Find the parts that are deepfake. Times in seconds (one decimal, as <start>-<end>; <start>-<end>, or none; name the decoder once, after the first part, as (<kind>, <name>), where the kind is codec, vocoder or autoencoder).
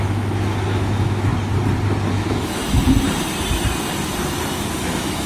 0.0-1.3 (autoencoder, DAC-VAE); 2.1-2.6; 4.7-5.3